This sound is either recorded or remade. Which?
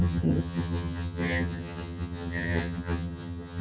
remade